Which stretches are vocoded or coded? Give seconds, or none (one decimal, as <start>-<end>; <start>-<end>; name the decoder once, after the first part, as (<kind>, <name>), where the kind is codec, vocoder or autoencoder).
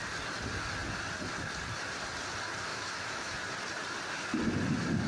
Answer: 2.7-3.3 (autoencoder, DAC-VAE)